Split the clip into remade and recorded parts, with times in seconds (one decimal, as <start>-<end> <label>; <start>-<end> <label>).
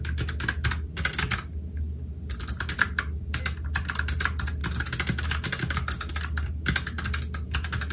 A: 0.0-7.9 recorded